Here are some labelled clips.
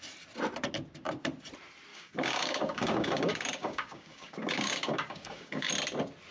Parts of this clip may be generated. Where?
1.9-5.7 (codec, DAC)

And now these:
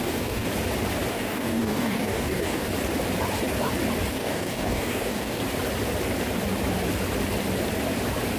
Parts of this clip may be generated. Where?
0.0-0.5 (codec, DAC); 1.1-2.7; 4.1-5.4

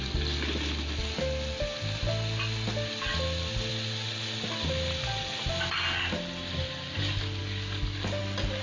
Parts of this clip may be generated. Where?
7.4-8.2 (codec, DAC)

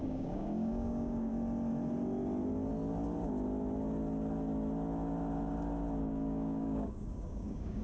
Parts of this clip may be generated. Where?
0.0-1.3 (codec, DAC); 6.0-7.8

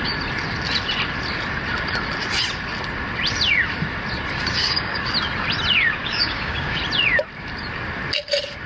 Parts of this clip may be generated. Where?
4.6-5.1 (codec, DAC); 6.0-6.8

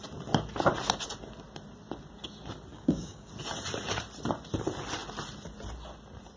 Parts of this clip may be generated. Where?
2.7-3.3 (codec, DAC)

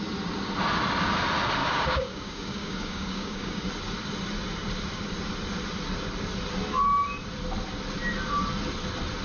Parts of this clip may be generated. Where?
1.6-3.7 (codec, DAC)